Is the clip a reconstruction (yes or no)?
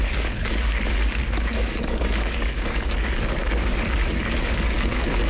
yes